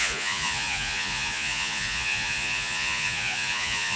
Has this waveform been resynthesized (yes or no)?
yes